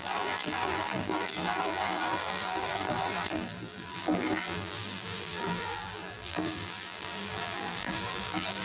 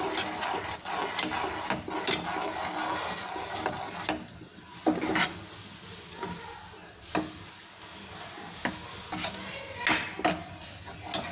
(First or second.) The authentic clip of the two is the second